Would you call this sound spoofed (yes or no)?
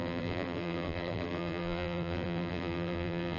yes